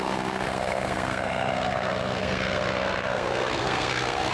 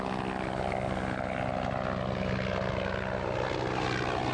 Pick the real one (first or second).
second